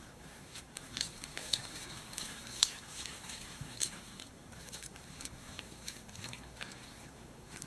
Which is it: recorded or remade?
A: remade